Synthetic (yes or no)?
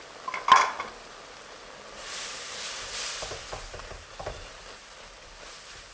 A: yes